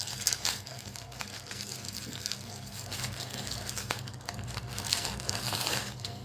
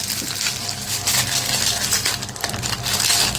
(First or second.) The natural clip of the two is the second